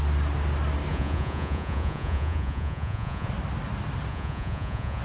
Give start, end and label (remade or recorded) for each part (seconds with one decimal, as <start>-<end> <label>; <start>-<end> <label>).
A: 0.0-0.9 recorded; 0.9-3.3 remade; 3.3-4.1 recorded; 4.1-5.0 remade